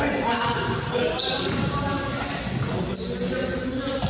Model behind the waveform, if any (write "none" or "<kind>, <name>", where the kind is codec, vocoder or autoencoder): none